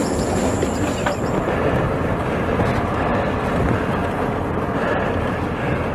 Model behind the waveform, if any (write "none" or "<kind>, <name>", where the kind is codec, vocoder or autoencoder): none